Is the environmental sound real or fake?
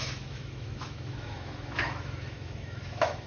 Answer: fake